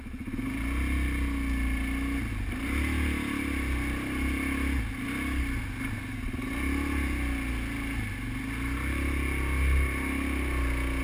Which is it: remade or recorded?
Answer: recorded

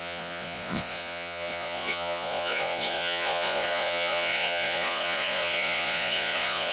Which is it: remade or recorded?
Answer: remade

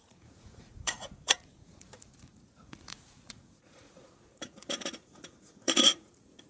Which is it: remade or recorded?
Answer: remade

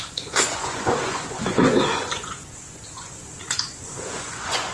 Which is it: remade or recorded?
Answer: remade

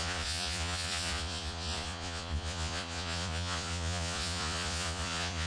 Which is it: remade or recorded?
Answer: remade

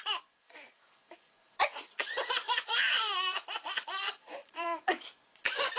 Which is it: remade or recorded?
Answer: remade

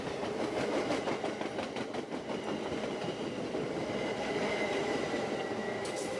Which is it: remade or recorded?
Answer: recorded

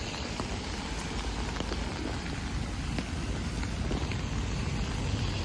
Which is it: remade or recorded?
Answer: recorded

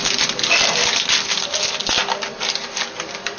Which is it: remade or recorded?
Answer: recorded